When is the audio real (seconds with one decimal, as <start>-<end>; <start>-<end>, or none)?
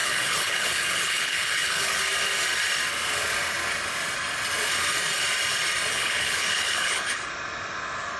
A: 2.0-5.9; 7.2-8.2